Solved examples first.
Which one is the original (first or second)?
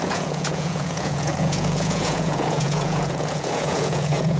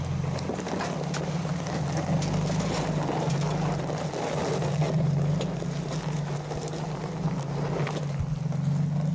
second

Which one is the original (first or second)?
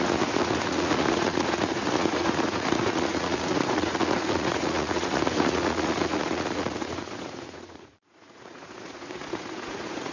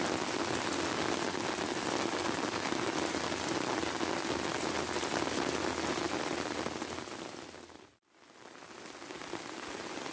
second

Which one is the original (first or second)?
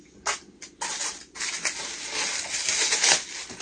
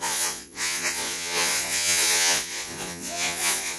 first